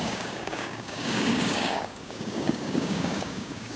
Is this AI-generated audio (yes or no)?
yes